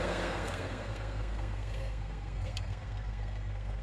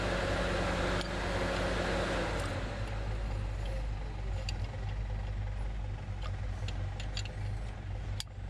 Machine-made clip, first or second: first